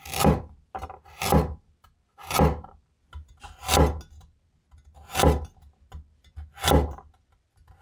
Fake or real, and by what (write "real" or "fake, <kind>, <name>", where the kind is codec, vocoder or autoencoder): real